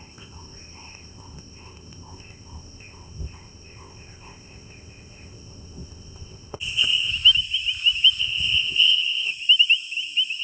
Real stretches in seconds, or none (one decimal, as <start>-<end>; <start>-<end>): 7.1-8.2; 9.3-10.4